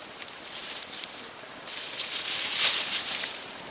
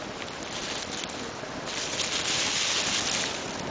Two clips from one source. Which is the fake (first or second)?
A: first